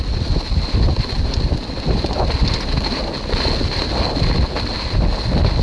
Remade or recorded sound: recorded